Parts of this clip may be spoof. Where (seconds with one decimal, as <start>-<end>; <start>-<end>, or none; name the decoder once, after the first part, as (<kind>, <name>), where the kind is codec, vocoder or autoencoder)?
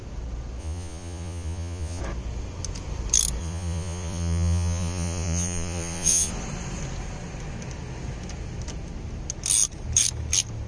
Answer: 0.6-2.0 (vocoder, Vocos); 3.4-6.3